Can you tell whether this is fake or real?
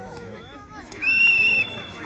fake